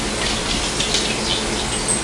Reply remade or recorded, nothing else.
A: recorded